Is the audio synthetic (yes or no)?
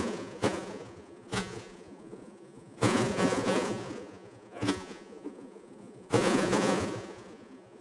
yes